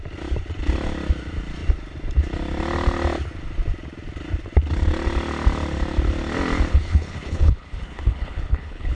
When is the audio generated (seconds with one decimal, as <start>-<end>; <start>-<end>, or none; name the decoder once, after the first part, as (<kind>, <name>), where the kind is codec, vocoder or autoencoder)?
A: 6.7-9.0 (codec, HILCodec)